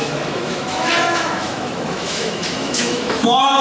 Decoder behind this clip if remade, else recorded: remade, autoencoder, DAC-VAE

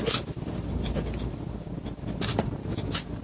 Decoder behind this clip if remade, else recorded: recorded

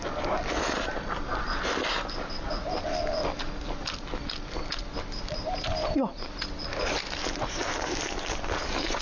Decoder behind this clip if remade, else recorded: recorded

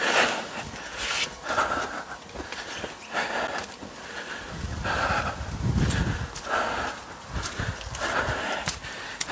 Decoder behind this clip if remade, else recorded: recorded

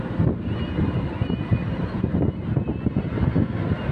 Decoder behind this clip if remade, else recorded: recorded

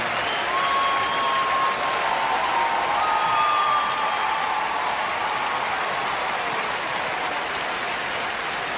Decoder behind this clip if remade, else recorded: recorded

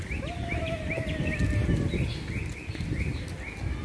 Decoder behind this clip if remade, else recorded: recorded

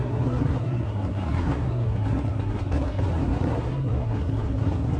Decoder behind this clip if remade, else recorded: remade, codec, SNAC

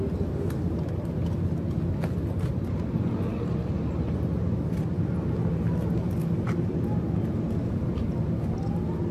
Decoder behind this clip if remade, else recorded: recorded